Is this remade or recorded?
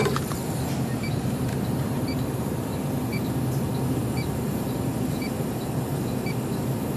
remade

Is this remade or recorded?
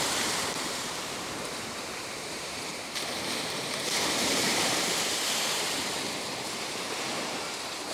remade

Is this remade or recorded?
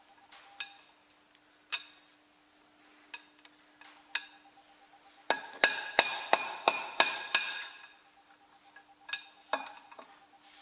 recorded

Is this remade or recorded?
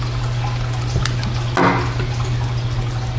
recorded